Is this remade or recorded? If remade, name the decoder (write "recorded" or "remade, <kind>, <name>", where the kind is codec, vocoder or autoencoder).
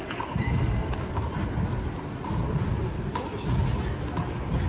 recorded